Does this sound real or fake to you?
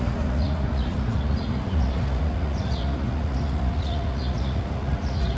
fake